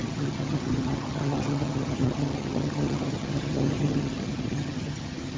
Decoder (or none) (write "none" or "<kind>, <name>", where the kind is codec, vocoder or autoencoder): vocoder, HiFi-GAN